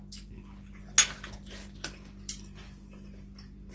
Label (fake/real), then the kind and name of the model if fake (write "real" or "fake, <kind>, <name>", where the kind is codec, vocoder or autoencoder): real